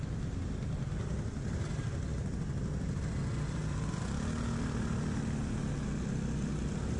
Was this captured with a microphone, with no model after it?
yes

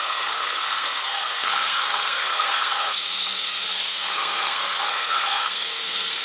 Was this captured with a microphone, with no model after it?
no